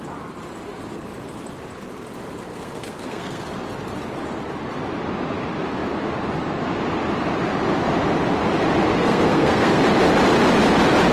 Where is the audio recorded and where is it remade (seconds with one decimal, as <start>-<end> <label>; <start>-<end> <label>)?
0.0-2.5 recorded; 2.5-3.4 remade; 3.4-8.9 recorded; 8.9-9.8 remade; 9.8-11.1 recorded